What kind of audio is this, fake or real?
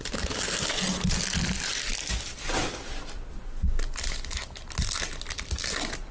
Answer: real